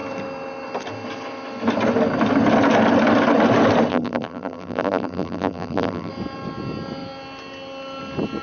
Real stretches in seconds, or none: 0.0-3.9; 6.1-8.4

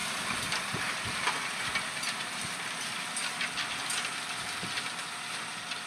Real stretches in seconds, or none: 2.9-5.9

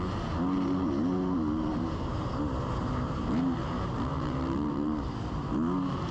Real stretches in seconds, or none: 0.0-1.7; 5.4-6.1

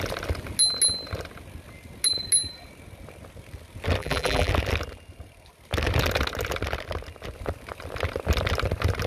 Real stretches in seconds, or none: 0.0-4.0; 4.5-9.1

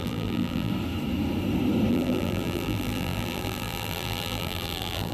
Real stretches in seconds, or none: 0.7-1.9

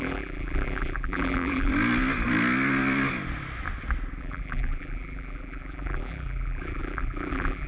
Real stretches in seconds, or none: 1.7-4.2